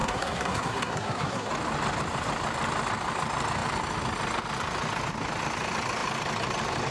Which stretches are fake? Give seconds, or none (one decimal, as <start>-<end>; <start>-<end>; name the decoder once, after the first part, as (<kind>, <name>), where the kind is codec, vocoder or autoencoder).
0.0-1.5 (codec, SNAC)